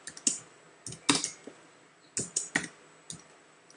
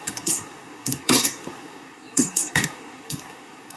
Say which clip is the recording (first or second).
first